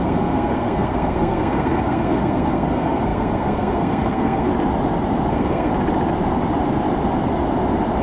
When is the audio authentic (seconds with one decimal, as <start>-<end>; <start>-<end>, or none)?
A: 4.5-5.3; 5.7-8.0